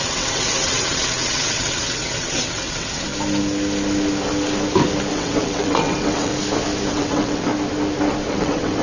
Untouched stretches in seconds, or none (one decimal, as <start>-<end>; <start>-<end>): 3.1-5.1; 6.3-6.9; 7.5-8.3